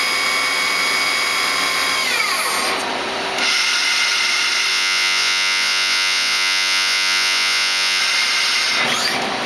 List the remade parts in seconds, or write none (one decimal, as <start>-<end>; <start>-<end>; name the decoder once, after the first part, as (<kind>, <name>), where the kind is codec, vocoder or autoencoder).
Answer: 4.7-8.0 (vocoder, Vocos)